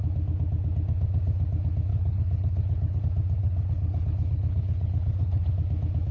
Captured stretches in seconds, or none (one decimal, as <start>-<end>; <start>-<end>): 0.0-1.9; 3.0-3.4; 5.5-6.1